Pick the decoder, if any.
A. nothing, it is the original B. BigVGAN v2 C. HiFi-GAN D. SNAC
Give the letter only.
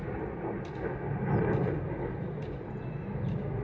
A